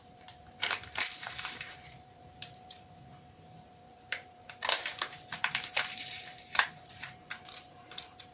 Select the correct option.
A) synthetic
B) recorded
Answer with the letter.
A